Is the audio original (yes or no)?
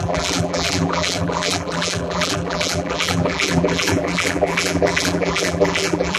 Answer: no